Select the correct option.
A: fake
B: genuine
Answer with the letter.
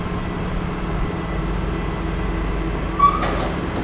B